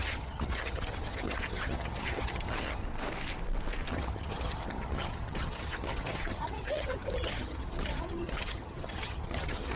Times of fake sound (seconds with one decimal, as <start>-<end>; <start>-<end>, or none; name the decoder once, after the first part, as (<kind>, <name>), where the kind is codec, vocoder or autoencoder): 0.0-2.8 (vocoder, HiFi-GAN); 3.9-9.8